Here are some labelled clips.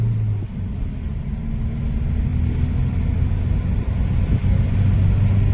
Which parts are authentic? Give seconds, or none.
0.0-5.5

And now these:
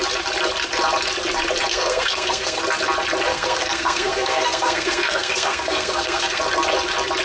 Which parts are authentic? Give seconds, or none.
0.0-1.7; 2.6-3.3; 6.4-7.2

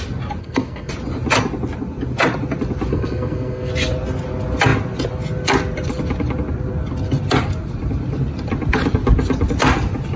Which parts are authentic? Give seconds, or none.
0.0-0.4; 0.9-2.9; 3.7-10.2

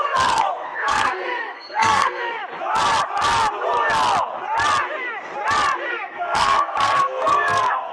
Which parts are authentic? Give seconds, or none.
2.4-5.9

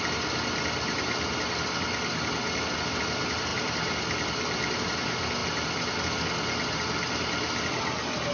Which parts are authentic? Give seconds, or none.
0.0-8.3